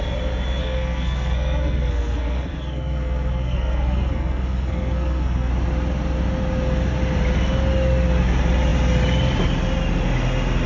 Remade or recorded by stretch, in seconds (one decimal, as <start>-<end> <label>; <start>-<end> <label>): 0.0-0.6 recorded; 0.6-5.5 remade; 5.5-10.7 recorded